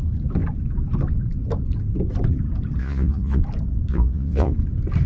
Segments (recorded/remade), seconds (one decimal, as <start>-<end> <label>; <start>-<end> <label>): 0.0-2.8 recorded; 2.8-3.4 remade; 3.4-3.9 recorded; 3.9-4.5 remade; 4.5-5.1 recorded